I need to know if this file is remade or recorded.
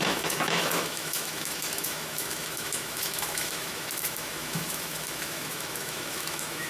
remade